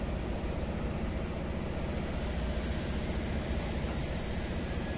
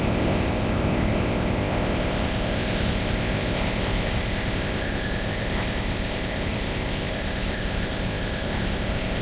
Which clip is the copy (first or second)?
second